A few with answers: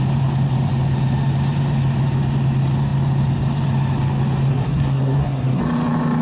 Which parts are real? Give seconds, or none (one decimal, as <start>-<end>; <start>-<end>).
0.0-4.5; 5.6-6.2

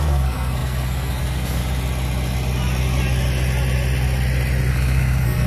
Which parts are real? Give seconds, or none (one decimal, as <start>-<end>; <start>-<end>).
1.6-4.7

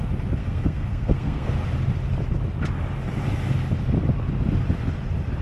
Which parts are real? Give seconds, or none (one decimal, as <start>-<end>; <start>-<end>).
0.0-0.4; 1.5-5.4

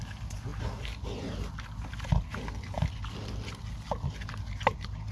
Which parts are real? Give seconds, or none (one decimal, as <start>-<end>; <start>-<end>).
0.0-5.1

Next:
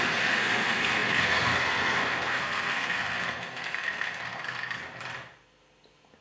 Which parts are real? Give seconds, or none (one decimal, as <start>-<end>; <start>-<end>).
4.8-6.2

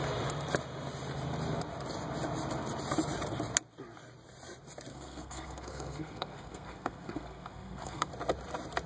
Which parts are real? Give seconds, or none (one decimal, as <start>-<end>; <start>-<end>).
0.0-4.9; 8.1-8.9